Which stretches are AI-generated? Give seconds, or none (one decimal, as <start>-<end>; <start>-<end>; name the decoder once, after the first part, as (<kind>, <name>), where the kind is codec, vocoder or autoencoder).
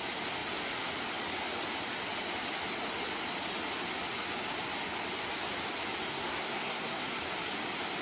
6.1-7.2 (codec, SNAC)